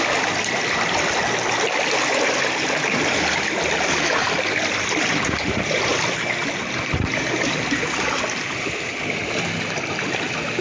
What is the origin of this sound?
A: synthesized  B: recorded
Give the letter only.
B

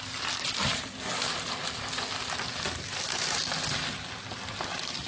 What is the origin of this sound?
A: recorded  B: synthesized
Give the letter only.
A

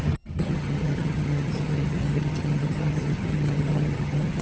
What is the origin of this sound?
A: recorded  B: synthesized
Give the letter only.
B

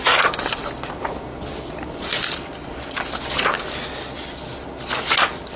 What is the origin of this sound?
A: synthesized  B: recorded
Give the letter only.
B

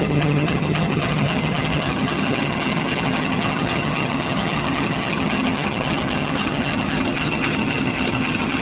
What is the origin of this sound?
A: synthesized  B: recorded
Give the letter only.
A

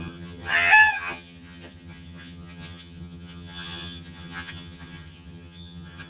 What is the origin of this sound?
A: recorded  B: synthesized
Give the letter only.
B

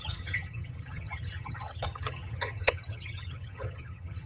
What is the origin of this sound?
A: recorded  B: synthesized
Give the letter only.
B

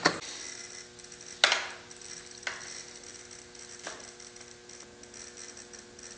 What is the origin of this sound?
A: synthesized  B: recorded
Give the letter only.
B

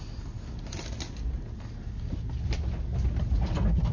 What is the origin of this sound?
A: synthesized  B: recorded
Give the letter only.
B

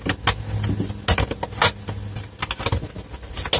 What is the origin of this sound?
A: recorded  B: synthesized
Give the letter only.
A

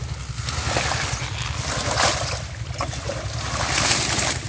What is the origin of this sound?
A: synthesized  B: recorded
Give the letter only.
B